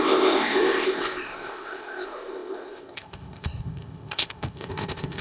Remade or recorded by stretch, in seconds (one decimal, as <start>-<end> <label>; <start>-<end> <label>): 0.0-5.2 remade